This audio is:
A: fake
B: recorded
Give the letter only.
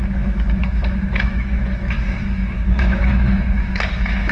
A